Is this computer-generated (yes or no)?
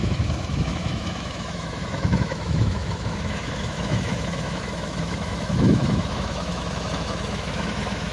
yes